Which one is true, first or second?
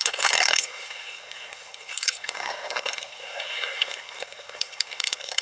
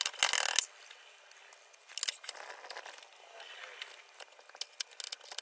second